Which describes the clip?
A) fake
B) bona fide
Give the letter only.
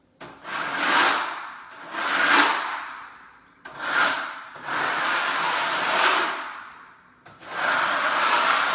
B